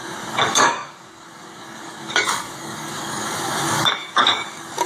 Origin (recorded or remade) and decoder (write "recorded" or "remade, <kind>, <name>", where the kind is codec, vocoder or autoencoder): remade, codec, DAC